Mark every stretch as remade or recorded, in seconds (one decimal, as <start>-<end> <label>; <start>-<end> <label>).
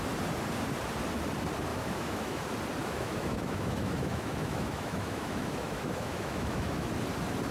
0.0-1.7 recorded; 1.7-2.4 remade; 2.4-2.8 recorded; 2.8-6.9 remade; 6.9-7.5 recorded